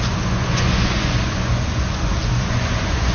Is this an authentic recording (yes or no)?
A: no